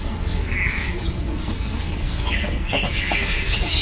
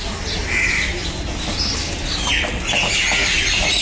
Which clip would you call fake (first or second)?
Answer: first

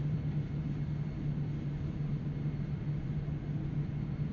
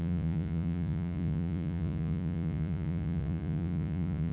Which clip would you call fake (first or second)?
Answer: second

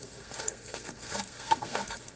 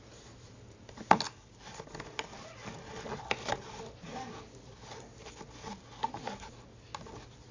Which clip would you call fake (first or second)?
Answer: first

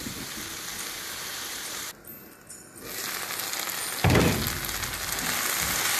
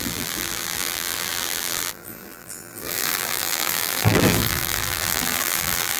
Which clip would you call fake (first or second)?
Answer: second